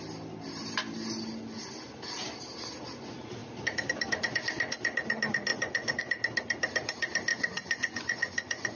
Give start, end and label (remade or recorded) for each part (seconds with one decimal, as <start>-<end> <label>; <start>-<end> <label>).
0.0-5.5 recorded; 5.5-6.0 remade; 6.0-7.3 recorded; 7.3-8.8 remade